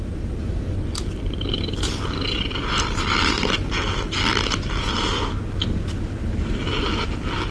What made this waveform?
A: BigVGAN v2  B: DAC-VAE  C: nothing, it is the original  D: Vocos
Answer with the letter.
C